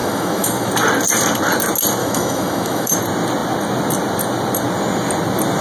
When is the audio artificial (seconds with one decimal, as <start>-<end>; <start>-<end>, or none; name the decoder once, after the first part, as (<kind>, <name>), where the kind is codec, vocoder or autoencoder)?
0.0-0.7 (autoencoder, DAC-VAE); 2.0-3.0